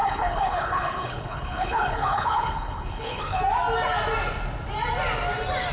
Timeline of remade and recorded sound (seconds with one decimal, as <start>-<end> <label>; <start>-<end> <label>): 0.0-3.4 remade; 3.4-5.7 recorded